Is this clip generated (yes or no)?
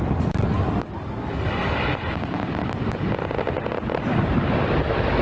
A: no